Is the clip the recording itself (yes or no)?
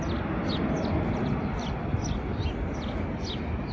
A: yes